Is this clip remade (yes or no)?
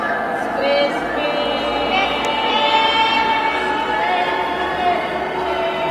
no